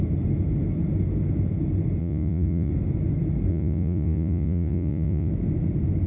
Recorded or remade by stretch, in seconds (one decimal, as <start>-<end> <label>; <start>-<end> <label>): 0.0-2.0 recorded; 2.0-2.7 remade; 2.7-3.5 recorded; 3.5-5.3 remade; 5.3-6.1 recorded